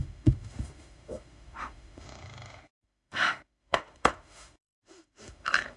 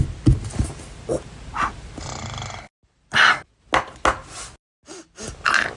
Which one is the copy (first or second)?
first